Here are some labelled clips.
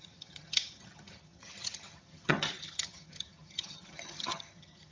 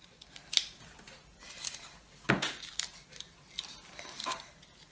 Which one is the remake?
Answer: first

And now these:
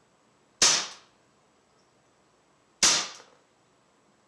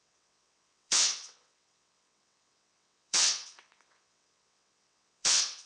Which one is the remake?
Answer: second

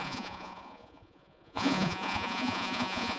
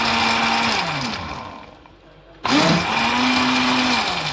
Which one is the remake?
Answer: first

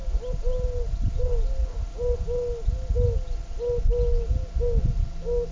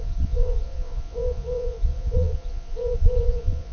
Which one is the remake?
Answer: second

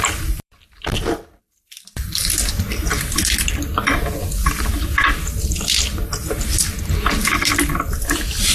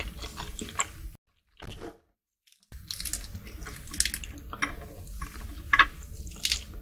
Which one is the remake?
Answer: first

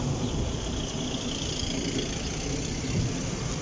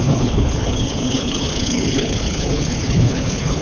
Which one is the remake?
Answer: second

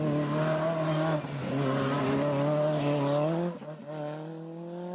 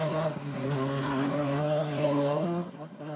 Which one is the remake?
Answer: second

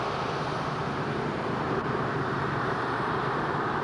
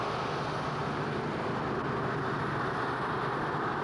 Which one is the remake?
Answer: first